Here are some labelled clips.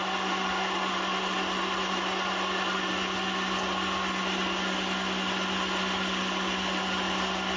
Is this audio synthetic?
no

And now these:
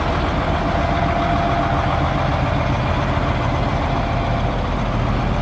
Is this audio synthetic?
no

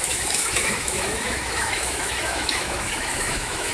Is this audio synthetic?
yes